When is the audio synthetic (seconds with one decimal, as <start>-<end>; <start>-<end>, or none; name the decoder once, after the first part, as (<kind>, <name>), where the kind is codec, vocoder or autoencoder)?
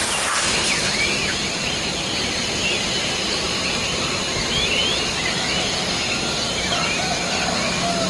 0.0-1.2 (vocoder, BigVGAN v2); 2.4-8.1